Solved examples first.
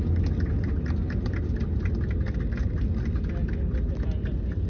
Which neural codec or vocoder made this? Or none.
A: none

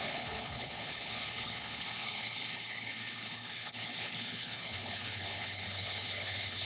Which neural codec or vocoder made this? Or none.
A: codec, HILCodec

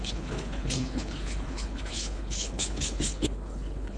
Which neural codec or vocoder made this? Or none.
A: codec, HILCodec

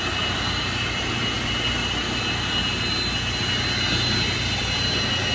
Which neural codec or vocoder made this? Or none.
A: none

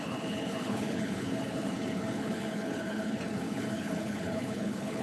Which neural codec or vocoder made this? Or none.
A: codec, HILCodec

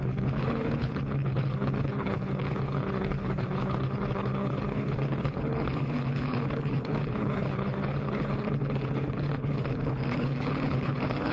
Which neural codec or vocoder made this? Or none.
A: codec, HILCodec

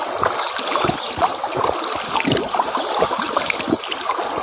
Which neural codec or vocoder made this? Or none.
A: none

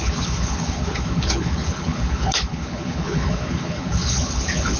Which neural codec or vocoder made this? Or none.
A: codec, HILCodec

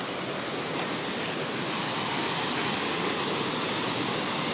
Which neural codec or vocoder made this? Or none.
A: none